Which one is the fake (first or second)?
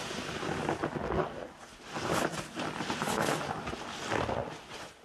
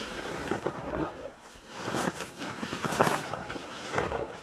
second